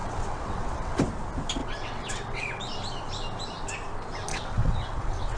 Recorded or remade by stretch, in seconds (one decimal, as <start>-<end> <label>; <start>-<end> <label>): 0.0-1.0 remade; 1.0-1.6 recorded; 1.6-2.6 remade; 2.6-4.3 recorded; 4.3-5.4 remade